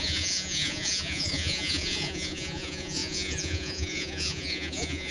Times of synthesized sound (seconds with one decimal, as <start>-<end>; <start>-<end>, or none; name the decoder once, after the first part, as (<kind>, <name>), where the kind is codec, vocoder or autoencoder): 0.0-5.1 (vocoder, Vocos)